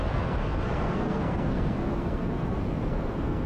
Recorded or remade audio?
remade